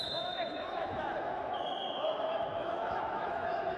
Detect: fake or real fake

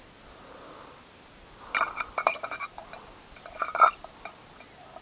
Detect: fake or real real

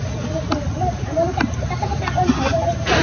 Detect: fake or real real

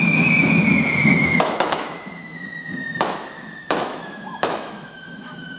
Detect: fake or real fake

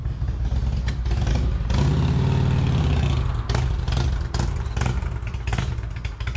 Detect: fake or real real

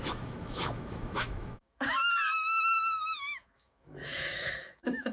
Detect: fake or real fake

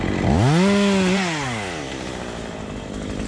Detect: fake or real real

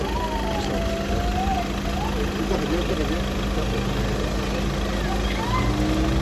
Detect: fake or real real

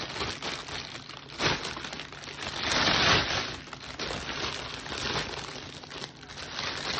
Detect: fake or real real